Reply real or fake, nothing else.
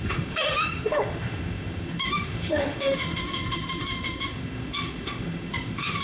fake